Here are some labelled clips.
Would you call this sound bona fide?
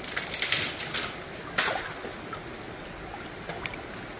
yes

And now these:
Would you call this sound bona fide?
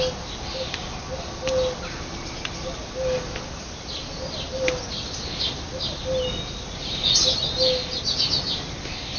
yes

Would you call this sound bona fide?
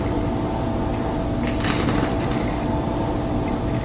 yes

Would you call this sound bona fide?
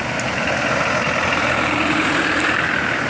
no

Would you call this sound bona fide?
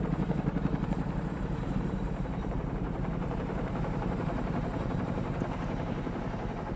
no